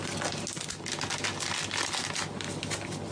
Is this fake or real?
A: real